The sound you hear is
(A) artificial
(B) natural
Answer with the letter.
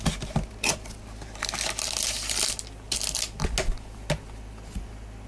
B